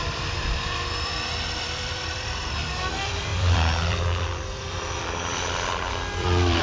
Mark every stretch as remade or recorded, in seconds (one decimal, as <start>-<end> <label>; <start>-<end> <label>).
0.0-6.6 remade